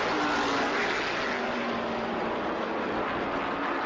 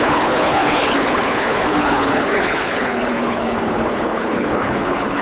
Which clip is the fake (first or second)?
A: second